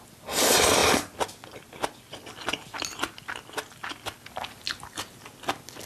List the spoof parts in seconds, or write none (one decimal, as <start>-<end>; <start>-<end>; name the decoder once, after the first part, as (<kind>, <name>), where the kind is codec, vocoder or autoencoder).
none